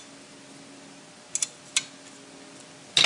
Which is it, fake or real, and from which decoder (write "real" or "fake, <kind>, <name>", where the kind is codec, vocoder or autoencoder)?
real